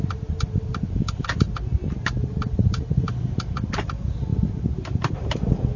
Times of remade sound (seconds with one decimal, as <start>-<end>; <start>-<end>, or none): none